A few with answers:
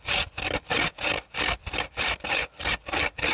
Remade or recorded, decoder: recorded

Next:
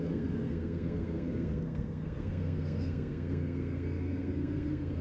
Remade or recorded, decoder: remade, codec, SNAC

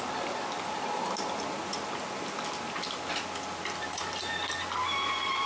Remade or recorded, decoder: recorded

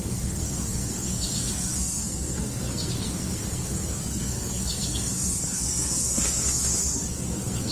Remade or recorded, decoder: remade, codec, SNAC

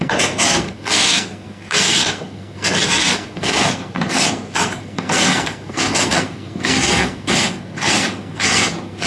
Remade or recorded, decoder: remade, codec, SNAC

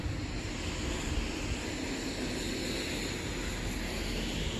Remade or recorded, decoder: recorded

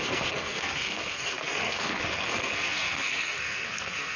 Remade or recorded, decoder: remade, codec, SNAC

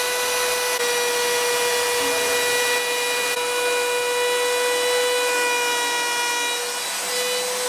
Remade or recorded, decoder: recorded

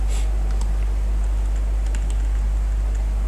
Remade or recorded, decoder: recorded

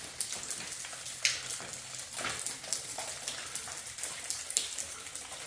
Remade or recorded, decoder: recorded